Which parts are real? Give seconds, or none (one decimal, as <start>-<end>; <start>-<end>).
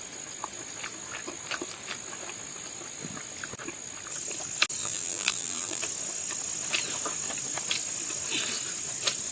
0.0-4.8; 5.8-9.3